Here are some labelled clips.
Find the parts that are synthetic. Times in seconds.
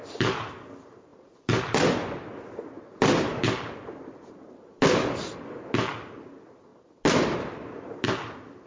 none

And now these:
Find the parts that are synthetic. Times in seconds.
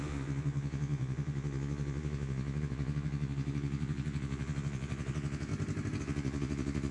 0.0-5.5 (vocoder, Vocos); 6.0-6.9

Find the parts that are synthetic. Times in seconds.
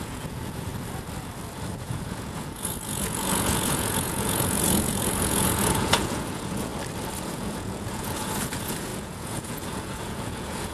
0.0-0.7 (vocoder, Vocos); 1.7-6.7; 7.3-10.7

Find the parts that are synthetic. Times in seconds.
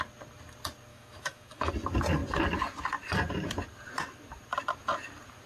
0.9-1.7 (autoencoder, DAC-VAE)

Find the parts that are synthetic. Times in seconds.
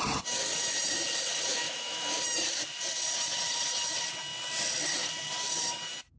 1.5-2.2 (autoencoder, DAC-VAE)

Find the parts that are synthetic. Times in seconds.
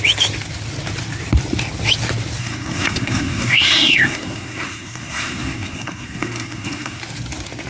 2.4-7.0 (codec, SNAC)